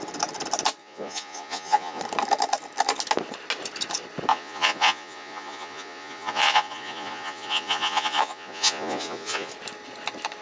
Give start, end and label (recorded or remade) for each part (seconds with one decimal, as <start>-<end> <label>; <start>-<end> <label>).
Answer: 0.0-0.8 recorded; 0.8-2.0 remade; 2.0-4.3 recorded; 4.3-9.5 remade; 9.5-10.4 recorded